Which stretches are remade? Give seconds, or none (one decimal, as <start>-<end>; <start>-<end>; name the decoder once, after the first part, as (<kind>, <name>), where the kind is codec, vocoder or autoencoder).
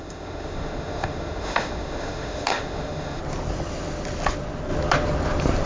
0.0-3.2 (autoencoder, DAC-VAE)